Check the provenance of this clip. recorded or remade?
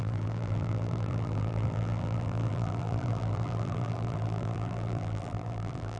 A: remade